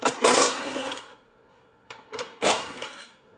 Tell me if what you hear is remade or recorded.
remade